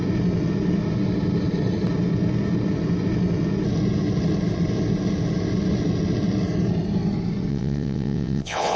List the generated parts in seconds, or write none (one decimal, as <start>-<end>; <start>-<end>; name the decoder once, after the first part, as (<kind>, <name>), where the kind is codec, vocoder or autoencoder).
7.5-8.8 (vocoder, WaveNeXt)